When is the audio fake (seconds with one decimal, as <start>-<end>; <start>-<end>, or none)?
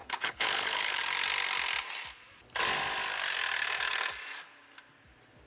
0.0-1.0